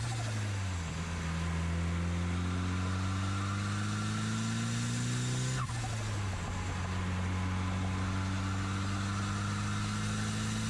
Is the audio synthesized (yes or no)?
no